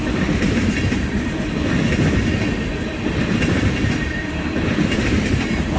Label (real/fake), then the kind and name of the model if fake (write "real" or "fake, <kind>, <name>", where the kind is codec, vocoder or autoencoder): fake, vocoder, BigVGAN v2